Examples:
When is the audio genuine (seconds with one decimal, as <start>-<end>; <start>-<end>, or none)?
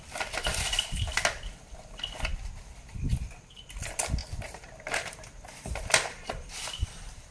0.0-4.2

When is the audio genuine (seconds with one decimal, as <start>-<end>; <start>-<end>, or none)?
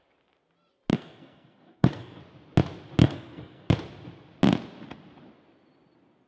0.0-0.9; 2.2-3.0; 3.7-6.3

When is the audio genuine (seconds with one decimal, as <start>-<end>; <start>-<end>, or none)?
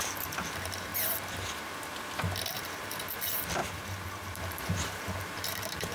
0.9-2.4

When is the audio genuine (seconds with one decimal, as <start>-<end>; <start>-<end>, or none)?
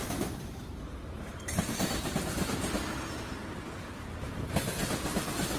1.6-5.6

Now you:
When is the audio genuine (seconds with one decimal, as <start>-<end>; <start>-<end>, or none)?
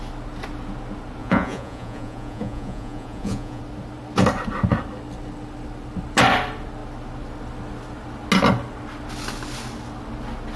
0.0-1.2; 3.6-10.6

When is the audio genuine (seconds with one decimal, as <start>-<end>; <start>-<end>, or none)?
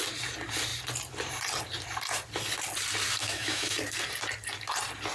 0.0-3.2; 3.8-5.1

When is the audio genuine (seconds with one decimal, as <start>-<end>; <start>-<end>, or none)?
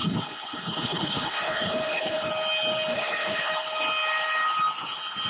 2.3-2.9; 3.5-5.3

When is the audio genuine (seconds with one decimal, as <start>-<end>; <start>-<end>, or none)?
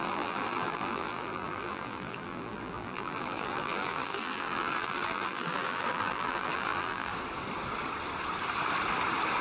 7.1-9.4